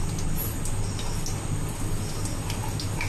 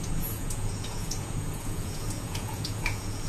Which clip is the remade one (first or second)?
second